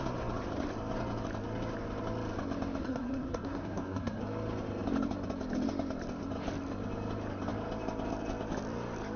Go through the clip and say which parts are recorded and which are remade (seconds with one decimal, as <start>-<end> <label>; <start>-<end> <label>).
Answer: 0.0-2.8 recorded; 2.8-4.2 remade; 4.2-9.2 recorded